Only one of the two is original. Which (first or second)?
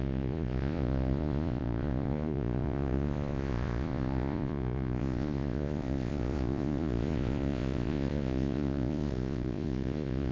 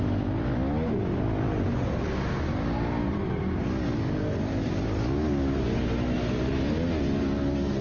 second